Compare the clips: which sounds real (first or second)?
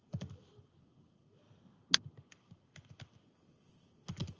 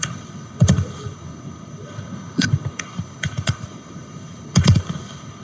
first